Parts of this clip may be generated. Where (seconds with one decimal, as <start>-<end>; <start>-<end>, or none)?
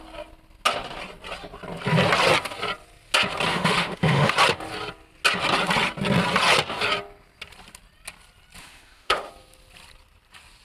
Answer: 3.5-4.3; 8.6-9.3